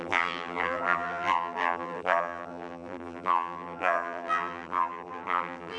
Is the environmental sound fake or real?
fake